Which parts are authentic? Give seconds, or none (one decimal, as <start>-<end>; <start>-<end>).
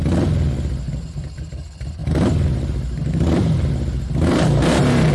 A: 0.0-2.0